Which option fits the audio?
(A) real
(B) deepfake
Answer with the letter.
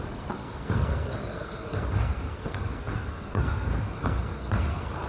B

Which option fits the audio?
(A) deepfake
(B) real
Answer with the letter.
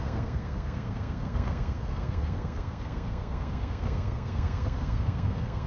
A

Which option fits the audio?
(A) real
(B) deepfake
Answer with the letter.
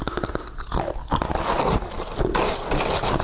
A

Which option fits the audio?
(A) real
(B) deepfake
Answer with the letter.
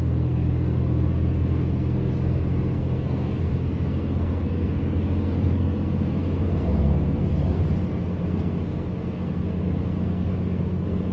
B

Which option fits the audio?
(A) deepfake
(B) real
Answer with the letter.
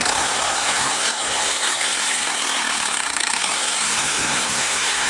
A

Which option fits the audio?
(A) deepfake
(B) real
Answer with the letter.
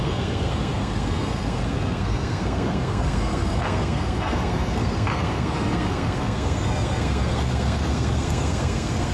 A